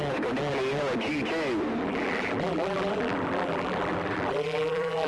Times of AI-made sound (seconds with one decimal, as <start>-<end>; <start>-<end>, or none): 1.8-5.1